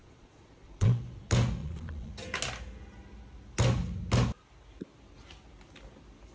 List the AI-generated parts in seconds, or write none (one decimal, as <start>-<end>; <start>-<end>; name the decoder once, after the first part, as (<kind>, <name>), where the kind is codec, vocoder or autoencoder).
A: 0.0-1.0 (vocoder, Vocos); 1.6-2.1